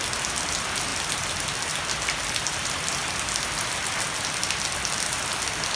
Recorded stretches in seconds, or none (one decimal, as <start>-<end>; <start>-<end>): 0.0-5.8